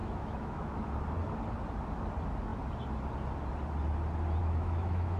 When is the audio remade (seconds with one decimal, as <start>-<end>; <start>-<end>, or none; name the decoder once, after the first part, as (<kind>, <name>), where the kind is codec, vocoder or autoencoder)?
0.0-0.9 (autoencoder, DAC-VAE); 4.4-5.2